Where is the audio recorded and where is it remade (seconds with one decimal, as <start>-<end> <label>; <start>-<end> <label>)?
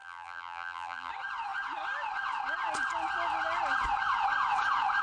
0.0-1.1 remade; 1.1-5.0 recorded